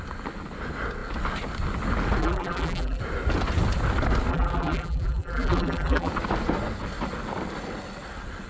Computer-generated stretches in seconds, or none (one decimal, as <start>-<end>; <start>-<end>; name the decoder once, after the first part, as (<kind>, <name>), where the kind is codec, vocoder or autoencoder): 2.2-3.0 (vocoder, BigVGAN v2); 4.3-6.1